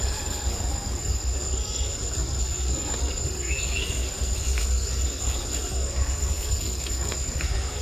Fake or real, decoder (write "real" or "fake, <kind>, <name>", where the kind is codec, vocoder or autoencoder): fake, codec, SNAC